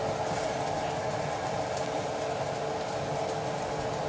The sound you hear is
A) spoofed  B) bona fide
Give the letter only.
B